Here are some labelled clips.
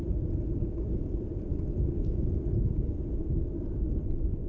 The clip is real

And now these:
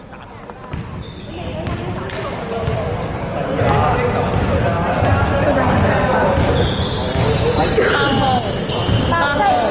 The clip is real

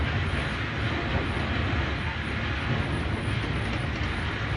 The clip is real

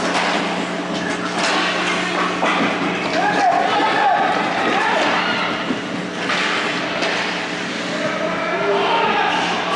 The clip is real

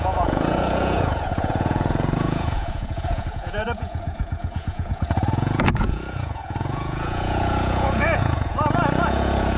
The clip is fake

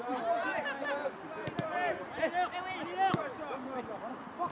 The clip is real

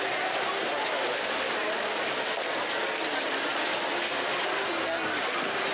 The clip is real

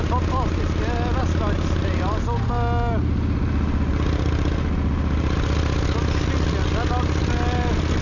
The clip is real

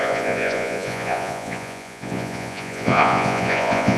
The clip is fake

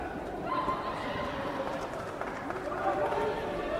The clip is real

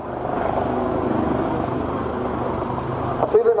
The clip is real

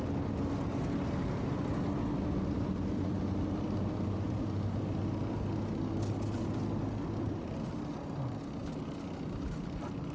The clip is real